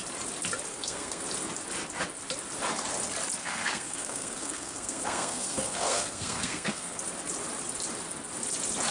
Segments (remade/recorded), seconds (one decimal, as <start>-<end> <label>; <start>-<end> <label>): 0.0-0.7 recorded; 0.7-1.2 remade; 1.2-3.4 recorded; 3.4-7.0 remade; 7.0-8.9 recorded